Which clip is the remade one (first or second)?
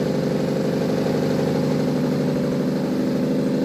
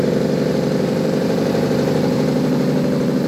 second